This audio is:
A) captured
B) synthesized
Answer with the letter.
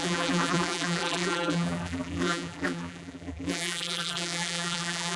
B